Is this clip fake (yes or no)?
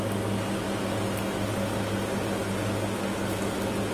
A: no